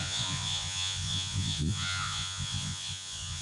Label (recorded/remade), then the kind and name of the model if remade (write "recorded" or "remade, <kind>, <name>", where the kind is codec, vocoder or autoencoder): remade, vocoder, Vocos